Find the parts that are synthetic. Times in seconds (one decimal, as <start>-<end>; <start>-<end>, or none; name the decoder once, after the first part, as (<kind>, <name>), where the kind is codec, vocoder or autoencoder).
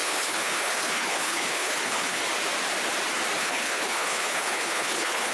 0.0-2.2 (codec, HILCodec); 3.4-5.3